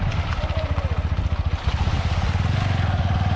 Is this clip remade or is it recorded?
recorded